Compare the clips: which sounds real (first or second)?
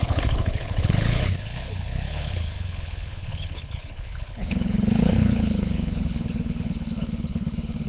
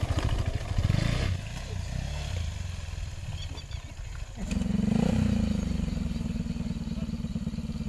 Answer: second